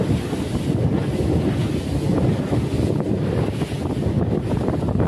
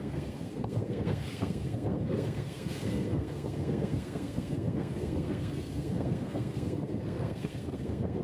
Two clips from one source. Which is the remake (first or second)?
second